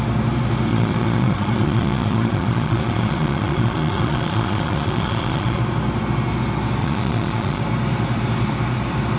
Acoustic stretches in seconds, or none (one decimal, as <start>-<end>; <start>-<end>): 0.0-0.7; 5.6-6.8; 7.6-9.2